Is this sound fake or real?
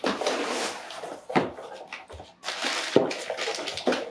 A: real